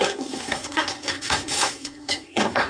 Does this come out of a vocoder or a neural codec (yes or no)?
yes